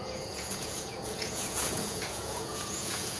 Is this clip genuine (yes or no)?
no